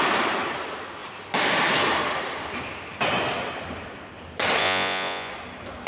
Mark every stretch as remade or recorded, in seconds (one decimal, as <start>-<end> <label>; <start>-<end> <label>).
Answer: 0.0-4.6 recorded; 4.6-5.3 remade; 5.3-5.9 recorded